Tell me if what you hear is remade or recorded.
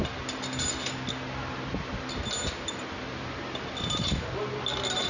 recorded